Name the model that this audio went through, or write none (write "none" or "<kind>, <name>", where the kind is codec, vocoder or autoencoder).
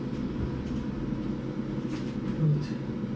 none